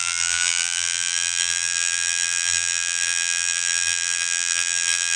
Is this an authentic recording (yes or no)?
no